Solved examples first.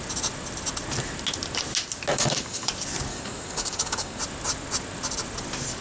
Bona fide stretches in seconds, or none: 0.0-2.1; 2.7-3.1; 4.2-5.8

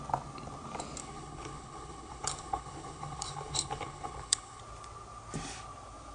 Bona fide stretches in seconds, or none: 0.0-1.0; 4.6-6.1

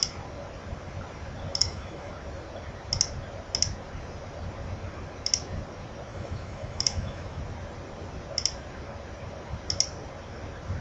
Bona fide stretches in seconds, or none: 0.0-1.6; 2.1-6.1; 7.4-10.8

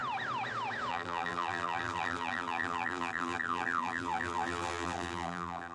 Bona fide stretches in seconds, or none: 0.0-0.9